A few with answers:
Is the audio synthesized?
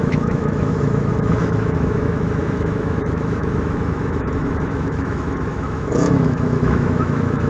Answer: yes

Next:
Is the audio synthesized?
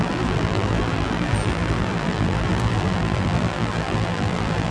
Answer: yes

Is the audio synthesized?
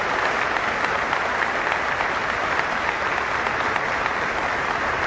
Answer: no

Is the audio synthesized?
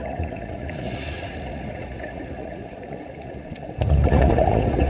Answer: yes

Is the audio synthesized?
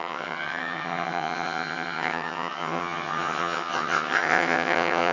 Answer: yes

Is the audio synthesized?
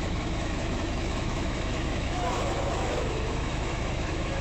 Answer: yes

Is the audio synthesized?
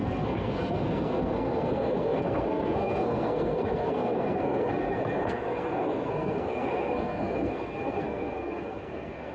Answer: yes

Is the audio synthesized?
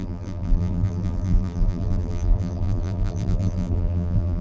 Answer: yes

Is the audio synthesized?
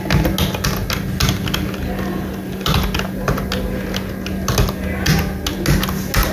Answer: no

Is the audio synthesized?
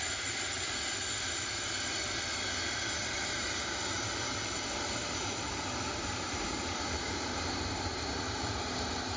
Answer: yes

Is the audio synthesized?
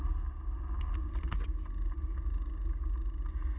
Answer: no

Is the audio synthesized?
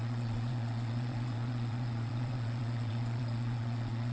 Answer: yes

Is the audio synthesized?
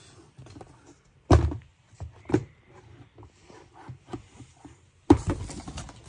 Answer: no